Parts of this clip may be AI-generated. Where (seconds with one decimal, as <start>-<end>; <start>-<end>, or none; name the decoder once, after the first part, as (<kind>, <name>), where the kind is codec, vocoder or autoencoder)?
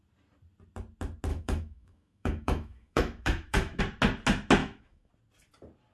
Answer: 1.3-3.8 (autoencoder, DAC-VAE); 4.6-5.1